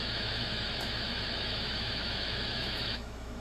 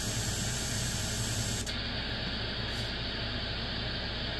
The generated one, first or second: first